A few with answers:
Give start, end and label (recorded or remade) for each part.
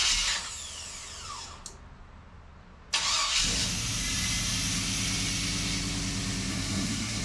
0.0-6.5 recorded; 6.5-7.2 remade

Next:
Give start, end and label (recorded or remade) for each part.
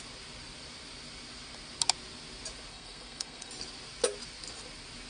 0.0-2.7 recorded; 2.7-3.5 remade; 3.5-5.1 recorded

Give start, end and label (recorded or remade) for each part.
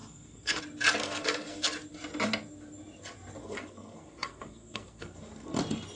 0.0-0.6 remade; 0.6-1.0 recorded; 1.0-1.7 remade; 1.7-3.4 recorded; 3.4-5.6 remade; 5.6-6.0 recorded